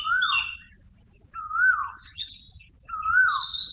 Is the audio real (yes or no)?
yes